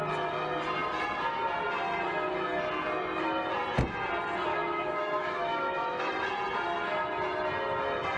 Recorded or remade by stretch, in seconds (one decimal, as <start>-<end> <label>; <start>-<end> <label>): 0.0-4.5 recorded; 4.5-6.1 remade; 6.1-8.2 recorded